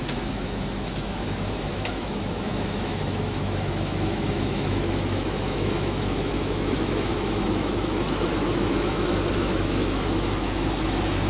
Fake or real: fake